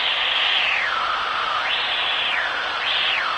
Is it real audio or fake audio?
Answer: real